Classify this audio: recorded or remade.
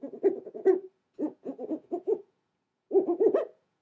remade